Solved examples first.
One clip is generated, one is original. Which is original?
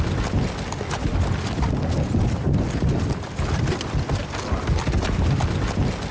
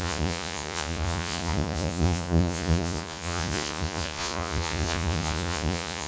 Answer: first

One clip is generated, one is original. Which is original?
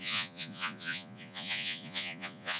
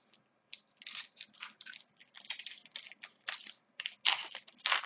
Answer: second